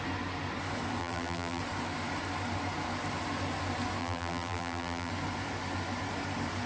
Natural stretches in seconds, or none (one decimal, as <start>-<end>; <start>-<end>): 0.0-1.0; 1.6-4.0; 5.1-6.7